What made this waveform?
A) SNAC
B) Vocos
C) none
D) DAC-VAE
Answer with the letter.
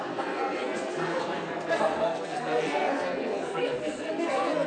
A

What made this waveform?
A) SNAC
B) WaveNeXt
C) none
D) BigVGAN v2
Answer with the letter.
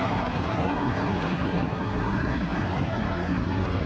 A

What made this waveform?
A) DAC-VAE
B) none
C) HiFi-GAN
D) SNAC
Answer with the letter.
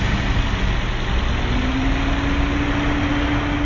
B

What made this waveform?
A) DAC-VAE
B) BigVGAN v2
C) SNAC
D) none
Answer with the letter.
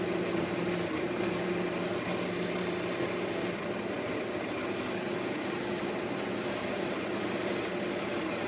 D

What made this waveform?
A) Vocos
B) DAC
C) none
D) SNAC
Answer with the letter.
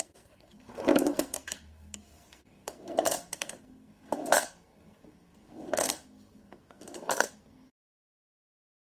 D